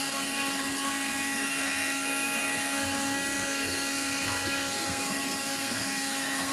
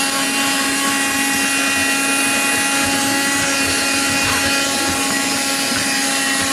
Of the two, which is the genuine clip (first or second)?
second